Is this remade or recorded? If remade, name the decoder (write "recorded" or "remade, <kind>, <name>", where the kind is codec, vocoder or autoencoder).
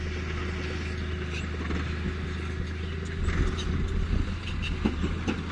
recorded